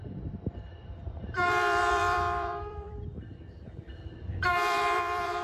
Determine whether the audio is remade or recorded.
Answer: remade